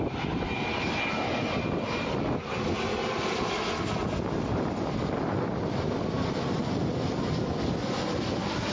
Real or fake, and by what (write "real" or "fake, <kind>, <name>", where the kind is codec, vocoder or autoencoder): real